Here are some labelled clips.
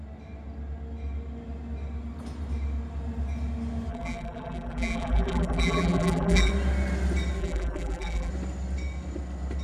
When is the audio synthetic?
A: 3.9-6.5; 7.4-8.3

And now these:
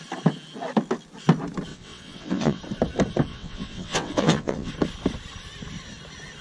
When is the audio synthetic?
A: 1.7-2.6; 3.3-4.7

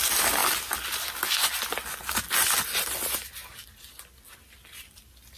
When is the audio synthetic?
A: none

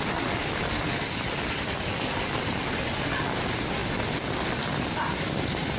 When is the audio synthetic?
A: none

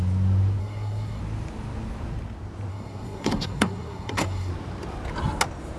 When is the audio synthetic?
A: 0.6-1.2; 2.7-4.5